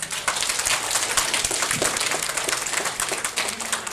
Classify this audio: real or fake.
real